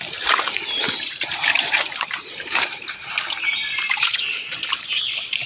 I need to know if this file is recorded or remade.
remade